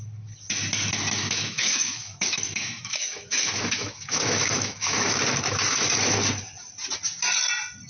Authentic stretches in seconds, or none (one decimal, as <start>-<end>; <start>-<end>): 0.0-1.2; 5.2-7.9